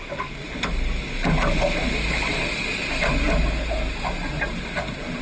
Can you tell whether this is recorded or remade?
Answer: recorded